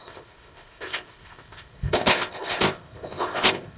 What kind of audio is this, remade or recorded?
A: remade